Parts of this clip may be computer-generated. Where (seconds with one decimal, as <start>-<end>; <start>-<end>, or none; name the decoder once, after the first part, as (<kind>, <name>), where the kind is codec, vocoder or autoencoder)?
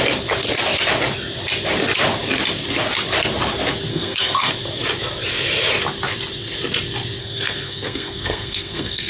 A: 3.9-4.5 (codec, SNAC); 7.2-9.1